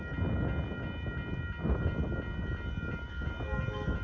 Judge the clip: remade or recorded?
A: recorded